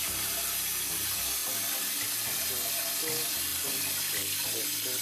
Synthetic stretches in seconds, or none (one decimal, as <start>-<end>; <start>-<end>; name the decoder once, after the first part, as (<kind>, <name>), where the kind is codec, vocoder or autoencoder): none